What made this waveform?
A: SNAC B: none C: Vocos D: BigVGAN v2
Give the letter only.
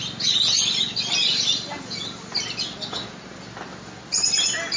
B